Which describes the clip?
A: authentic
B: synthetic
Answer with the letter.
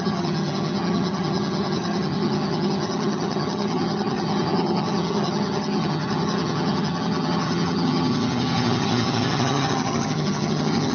B